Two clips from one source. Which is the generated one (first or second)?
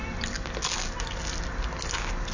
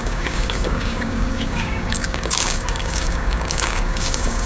second